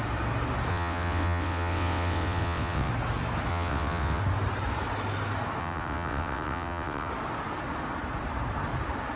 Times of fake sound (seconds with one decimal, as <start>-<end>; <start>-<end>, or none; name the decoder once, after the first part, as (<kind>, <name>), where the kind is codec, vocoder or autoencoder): 0.7-2.9 (vocoder, WaveNeXt); 3.5-4.2; 5.6-7.1